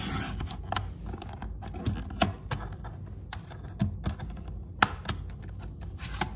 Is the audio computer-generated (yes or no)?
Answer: no